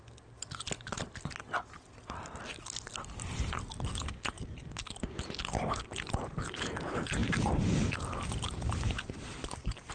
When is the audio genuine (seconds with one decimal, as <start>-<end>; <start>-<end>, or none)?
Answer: 0.0-9.9